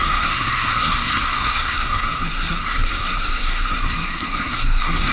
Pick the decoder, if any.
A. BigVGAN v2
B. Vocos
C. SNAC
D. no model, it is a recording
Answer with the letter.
C